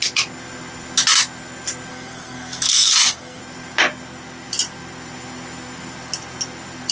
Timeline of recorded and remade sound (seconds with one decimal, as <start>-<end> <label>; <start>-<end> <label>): 0.0-1.9 recorded; 1.9-3.4 remade; 3.4-6.9 recorded

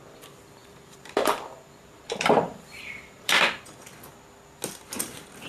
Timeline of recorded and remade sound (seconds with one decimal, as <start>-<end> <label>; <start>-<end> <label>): 0.0-0.6 recorded; 0.6-3.9 remade; 3.9-5.5 recorded